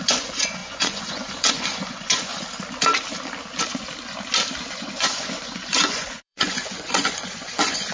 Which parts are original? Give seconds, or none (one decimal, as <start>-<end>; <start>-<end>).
2.3-4.7